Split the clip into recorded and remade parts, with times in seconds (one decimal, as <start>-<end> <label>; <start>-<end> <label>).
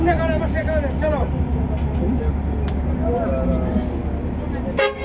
0.0-5.0 recorded